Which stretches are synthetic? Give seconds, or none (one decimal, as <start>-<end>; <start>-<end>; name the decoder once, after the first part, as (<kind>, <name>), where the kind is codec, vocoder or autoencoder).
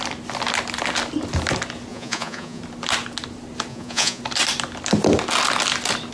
1.9-2.6 (vocoder, Vocos); 3.7-4.2